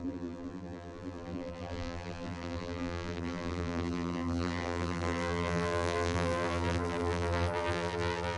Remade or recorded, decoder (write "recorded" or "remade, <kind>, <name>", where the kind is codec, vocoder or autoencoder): remade, vocoder, BigVGAN v2